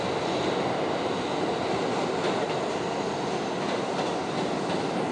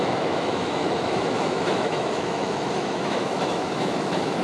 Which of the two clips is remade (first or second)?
second